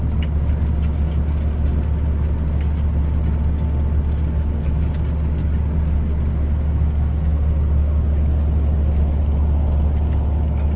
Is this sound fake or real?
real